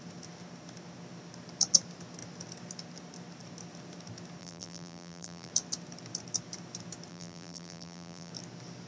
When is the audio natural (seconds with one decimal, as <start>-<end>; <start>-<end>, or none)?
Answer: 0.0-4.4; 5.5-7.1; 8.3-8.9